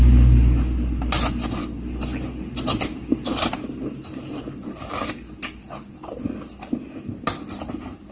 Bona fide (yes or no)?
yes